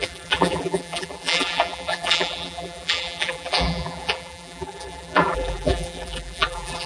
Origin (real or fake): fake